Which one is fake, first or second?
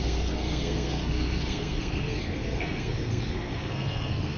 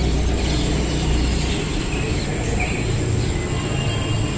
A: first